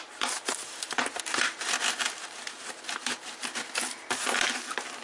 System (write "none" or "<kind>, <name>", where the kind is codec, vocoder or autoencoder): none